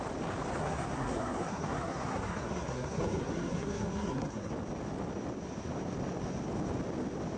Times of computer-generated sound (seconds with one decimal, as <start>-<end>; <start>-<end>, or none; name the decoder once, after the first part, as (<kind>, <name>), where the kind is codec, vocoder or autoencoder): 0.6-4.5 (codec, SNAC)